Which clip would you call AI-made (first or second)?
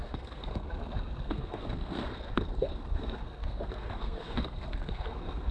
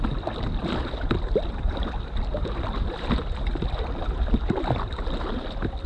first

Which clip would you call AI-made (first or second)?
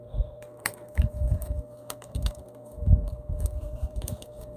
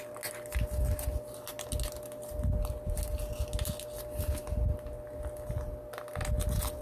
first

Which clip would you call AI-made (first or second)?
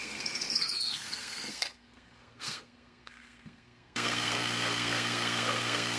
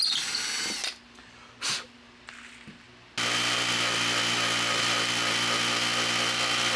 first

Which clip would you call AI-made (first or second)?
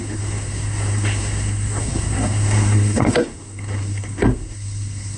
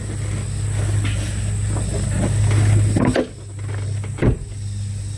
first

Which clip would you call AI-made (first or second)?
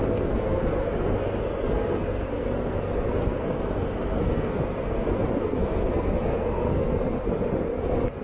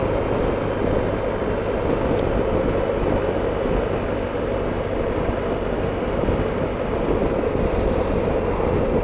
first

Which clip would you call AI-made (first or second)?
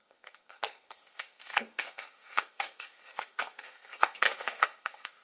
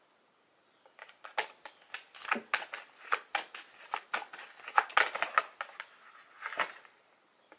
first